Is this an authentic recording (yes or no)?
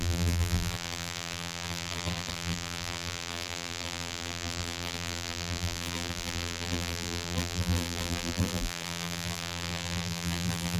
no